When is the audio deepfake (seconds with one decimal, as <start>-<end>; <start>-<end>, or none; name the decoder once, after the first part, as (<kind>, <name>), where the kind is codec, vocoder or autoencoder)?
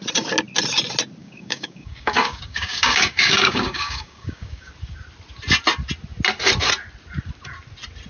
1.2-4.7 (codec, DAC)